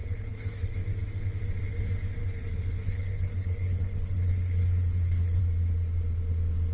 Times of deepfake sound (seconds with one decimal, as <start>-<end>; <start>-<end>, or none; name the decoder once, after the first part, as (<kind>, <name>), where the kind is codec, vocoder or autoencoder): 0.0-0.8 (codec, HILCodec); 2.2-5.4